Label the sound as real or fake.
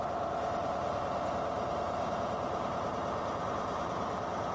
fake